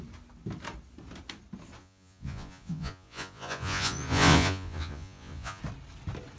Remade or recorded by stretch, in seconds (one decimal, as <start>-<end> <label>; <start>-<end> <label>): 0.0-1.8 recorded; 1.8-5.6 remade; 5.6-6.4 recorded